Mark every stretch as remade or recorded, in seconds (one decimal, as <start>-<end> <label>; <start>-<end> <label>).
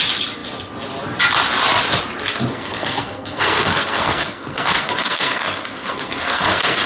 0.0-2.5 recorded; 2.5-6.9 remade